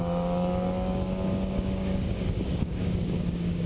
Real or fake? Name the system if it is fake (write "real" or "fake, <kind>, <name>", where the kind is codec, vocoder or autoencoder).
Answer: fake, codec, DAC